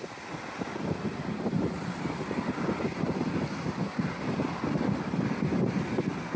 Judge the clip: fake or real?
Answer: real